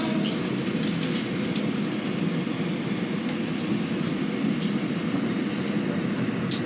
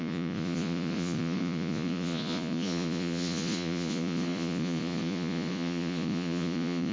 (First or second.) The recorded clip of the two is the first